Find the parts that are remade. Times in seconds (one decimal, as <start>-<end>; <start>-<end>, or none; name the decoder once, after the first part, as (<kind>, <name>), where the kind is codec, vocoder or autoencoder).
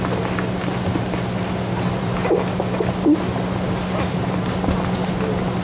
1.2-3.2 (vocoder, BigVGAN v2)